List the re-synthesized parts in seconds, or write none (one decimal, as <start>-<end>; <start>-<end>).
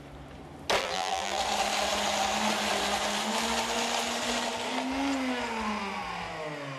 0.8-1.4